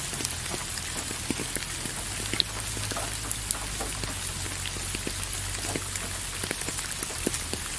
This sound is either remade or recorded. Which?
recorded